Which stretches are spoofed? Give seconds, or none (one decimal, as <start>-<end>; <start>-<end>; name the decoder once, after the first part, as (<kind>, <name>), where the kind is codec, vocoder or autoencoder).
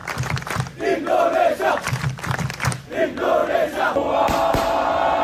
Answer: 1.7-3.4 (vocoder, BigVGAN v2); 4.7-5.2